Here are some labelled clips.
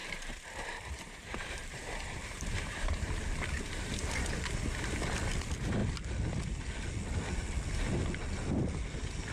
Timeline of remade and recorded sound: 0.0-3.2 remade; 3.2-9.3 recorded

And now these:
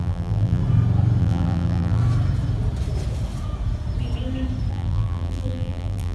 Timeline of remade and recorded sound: 0.0-0.6 remade; 0.6-1.2 recorded; 1.2-2.0 remade; 2.0-4.7 recorded; 4.7-6.1 remade

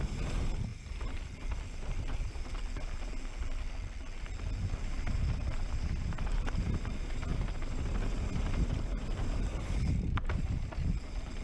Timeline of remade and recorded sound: 0.0-0.7 recorded; 0.7-2.4 remade; 2.4-8.9 recorded; 8.9-10.9 remade; 10.9-11.4 recorded

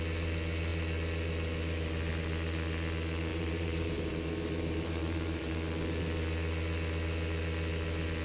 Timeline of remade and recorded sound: 0.0-3.3 recorded; 3.3-5.5 remade; 5.5-8.2 recorded

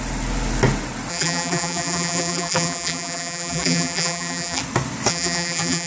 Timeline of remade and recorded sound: 0.0-1.1 recorded; 1.1-4.6 remade; 4.6-5.1 recorded; 5.1-5.9 remade

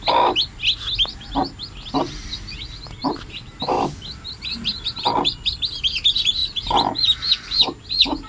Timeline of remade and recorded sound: 0.0-3.0 recorded; 3.0-3.9 remade; 3.9-8.3 recorded

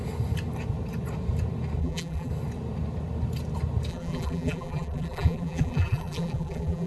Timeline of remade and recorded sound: 0.0-1.8 recorded; 1.8-2.3 remade; 2.3-3.9 recorded; 3.9-6.9 remade